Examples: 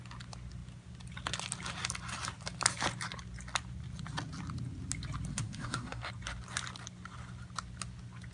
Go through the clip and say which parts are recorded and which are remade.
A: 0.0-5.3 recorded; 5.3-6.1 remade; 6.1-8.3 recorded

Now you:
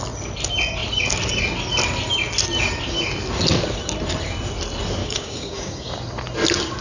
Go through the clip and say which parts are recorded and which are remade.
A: 0.0-5.0 recorded; 5.0-5.9 remade; 5.9-6.8 recorded

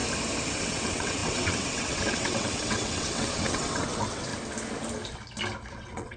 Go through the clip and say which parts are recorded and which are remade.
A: 0.0-0.5 recorded; 0.5-4.3 remade; 4.3-5.7 recorded; 5.7-6.2 remade